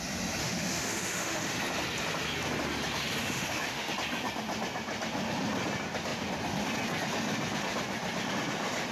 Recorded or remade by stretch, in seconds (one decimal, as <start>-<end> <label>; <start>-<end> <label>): 0.0-0.4 recorded; 0.4-1.6 remade; 1.6-3.2 recorded; 3.2-3.9 remade; 3.9-8.9 recorded